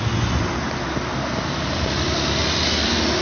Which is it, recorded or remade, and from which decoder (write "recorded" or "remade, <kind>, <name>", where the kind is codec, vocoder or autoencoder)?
recorded